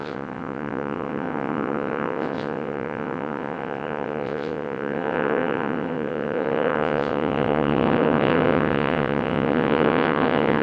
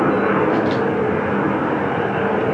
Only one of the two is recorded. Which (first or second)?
second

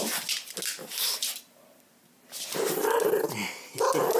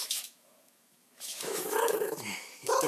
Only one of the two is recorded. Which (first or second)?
first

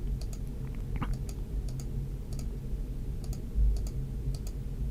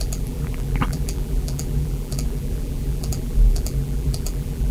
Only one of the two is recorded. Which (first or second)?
first